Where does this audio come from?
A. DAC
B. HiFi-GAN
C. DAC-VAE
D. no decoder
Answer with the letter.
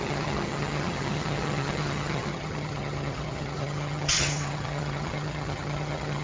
B